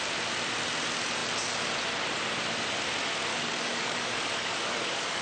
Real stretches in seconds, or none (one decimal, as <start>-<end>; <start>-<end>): 0.0-3.3